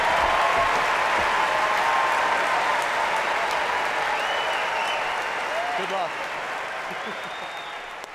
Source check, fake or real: real